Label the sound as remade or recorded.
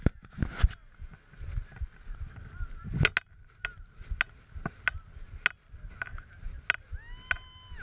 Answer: recorded